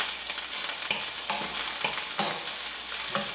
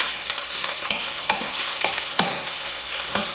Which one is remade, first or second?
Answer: second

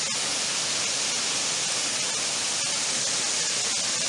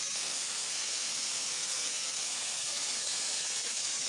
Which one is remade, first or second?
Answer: second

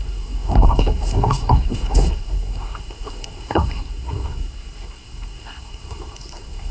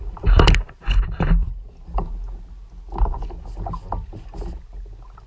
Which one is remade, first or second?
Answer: first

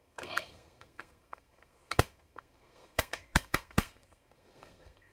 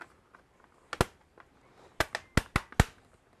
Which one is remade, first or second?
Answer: first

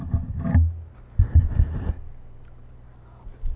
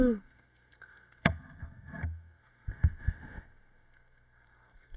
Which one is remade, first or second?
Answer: second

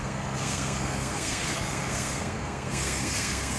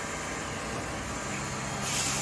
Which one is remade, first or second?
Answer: first